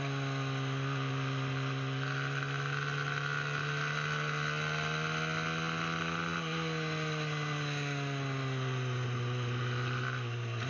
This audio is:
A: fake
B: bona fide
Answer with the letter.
B